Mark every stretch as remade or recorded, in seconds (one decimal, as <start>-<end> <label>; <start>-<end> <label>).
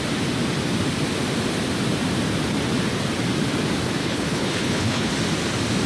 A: 0.0-4.0 recorded; 4.0-5.1 remade; 5.1-5.9 recorded